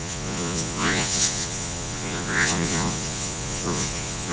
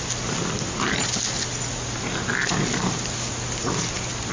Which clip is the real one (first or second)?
second